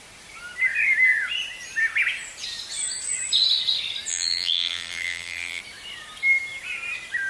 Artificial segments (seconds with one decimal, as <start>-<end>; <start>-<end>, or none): 4.1-5.6